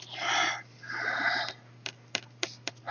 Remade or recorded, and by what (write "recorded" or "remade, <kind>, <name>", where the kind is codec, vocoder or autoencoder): recorded